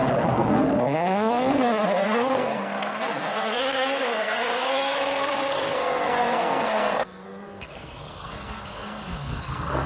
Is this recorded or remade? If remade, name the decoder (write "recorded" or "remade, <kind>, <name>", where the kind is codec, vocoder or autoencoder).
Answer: remade, codec, SNAC